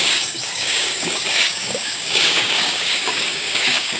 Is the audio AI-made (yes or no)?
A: yes